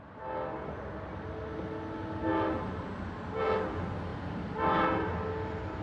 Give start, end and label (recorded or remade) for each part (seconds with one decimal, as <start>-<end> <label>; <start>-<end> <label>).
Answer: 0.0-4.1 recorded; 4.1-5.2 remade; 5.2-5.8 recorded